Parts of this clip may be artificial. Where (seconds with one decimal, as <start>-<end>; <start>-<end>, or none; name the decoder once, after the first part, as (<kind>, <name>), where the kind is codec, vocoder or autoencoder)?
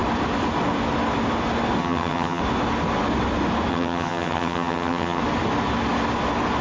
1.8-2.4 (vocoder, HiFi-GAN); 3.7-5.2